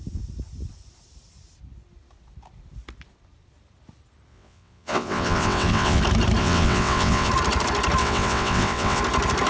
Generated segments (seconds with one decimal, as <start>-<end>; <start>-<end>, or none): 4.3-6.0; 6.4-7.3; 8.0-9.0